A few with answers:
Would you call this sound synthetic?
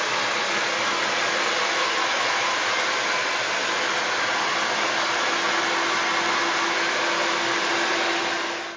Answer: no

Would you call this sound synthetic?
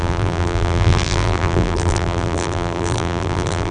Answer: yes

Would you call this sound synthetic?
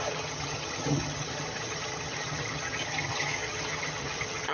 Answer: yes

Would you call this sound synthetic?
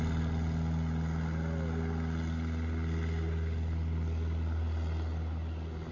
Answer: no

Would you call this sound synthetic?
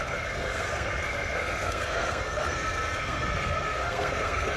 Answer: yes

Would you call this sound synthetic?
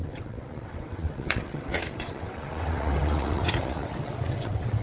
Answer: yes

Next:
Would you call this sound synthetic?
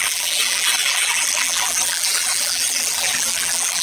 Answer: yes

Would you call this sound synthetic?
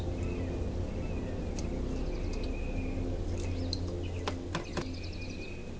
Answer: no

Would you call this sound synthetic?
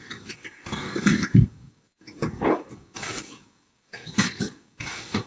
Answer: yes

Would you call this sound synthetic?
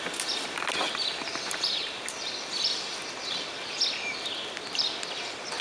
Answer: no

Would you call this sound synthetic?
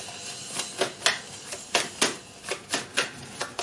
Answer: no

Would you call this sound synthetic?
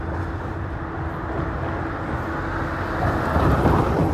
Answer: no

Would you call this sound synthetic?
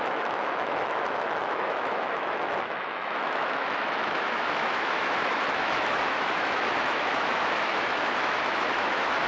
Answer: yes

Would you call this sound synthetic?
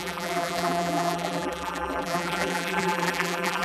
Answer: yes